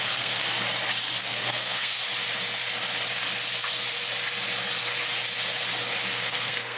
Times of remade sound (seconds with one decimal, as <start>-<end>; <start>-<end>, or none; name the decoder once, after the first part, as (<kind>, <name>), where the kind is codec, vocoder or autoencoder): 0.0-0.4 (codec, SNAC); 1.2-2.0; 6.1-6.8